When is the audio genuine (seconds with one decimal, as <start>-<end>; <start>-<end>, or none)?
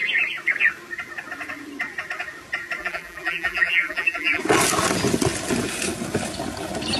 0.0-2.8; 4.4-7.0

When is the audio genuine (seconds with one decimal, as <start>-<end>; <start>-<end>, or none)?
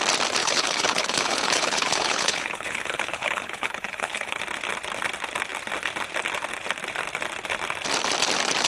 0.0-0.4; 4.4-8.7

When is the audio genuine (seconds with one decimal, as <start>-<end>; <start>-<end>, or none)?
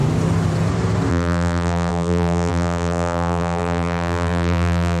0.0-1.1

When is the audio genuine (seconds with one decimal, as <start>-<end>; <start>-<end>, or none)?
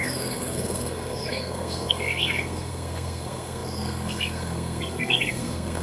none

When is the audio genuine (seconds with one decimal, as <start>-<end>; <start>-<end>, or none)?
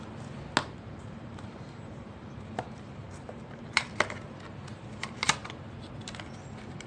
0.0-0.6; 3.9-6.9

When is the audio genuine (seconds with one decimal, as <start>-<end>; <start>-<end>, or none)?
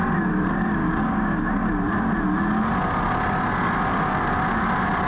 0.0-0.8; 1.5-5.1